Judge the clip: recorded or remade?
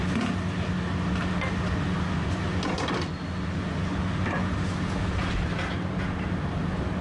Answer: recorded